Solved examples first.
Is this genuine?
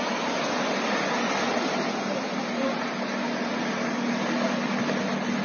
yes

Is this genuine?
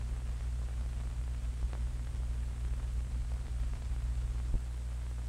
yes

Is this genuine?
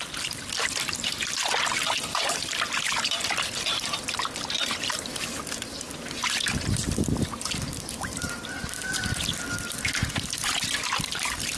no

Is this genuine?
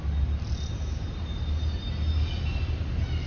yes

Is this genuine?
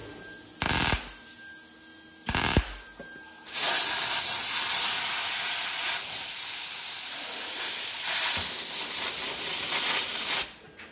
yes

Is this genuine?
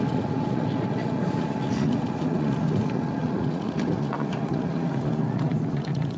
no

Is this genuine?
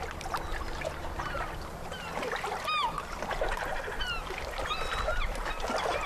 yes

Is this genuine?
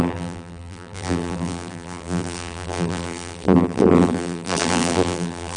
no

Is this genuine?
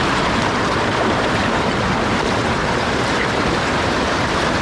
no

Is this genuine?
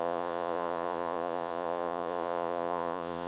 no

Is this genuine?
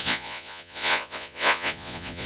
no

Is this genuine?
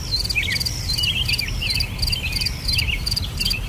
no